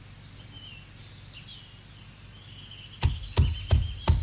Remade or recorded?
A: recorded